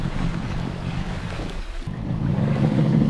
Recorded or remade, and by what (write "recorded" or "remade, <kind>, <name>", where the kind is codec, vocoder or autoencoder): remade, codec, DAC